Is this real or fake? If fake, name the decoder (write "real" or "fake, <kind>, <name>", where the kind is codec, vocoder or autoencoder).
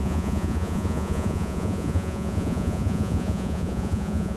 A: fake, vocoder, Vocos